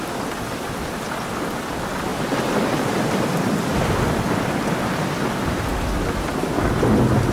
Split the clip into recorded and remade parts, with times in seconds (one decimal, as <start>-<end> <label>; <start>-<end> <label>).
0.0-7.3 recorded